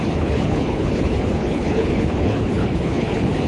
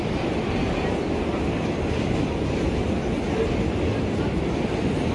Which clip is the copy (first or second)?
first